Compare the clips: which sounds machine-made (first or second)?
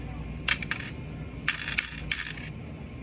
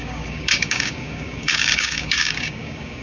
second